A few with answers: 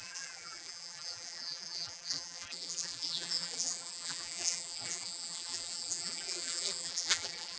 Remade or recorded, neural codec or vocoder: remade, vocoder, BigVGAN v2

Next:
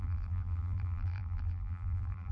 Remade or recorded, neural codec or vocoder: remade, vocoder, BigVGAN v2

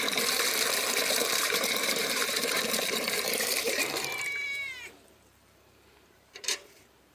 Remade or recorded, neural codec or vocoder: remade, vocoder, BigVGAN v2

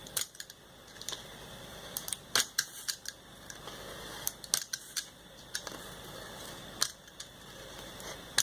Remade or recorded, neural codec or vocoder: recorded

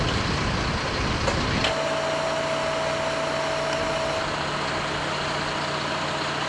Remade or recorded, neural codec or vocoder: recorded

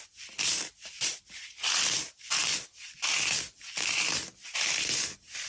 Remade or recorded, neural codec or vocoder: remade, vocoder, BigVGAN v2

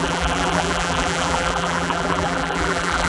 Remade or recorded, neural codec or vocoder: remade, vocoder, BigVGAN v2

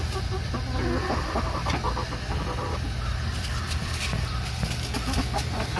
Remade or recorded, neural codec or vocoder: recorded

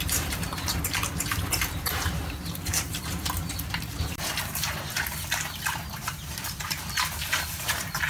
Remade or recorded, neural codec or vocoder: remade, vocoder, BigVGAN v2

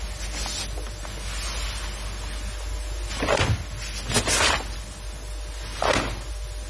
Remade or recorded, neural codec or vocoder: recorded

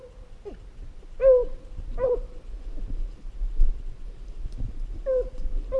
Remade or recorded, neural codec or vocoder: recorded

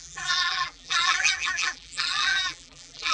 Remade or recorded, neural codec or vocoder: remade, vocoder, BigVGAN v2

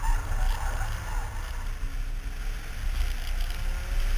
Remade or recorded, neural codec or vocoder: recorded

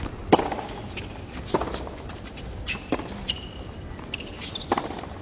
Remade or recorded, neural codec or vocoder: remade, vocoder, BigVGAN v2